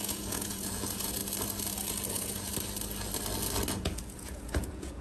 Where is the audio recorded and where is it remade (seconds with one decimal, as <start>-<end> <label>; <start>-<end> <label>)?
0.0-1.2 remade; 1.2-2.1 recorded; 2.1-2.5 remade; 2.5-3.7 recorded; 3.7-5.0 remade